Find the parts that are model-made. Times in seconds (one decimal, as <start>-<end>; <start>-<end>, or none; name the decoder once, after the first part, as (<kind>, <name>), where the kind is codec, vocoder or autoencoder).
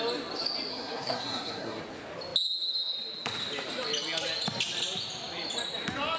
0.7-1.8 (codec, SNAC)